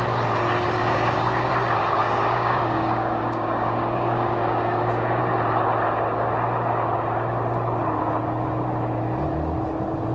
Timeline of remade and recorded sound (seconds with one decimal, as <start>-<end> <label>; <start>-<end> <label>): 0.0-0.8 recorded; 0.8-1.5 remade; 1.5-2.0 recorded; 2.0-5.2 remade; 5.2-10.1 recorded